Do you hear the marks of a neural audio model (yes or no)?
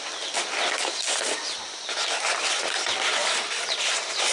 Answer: no